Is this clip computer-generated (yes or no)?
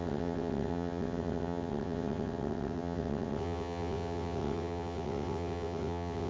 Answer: yes